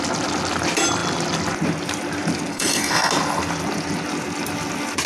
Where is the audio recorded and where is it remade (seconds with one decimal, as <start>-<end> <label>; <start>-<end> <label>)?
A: 0.0-2.5 recorded; 2.5-3.1 remade; 3.1-5.1 recorded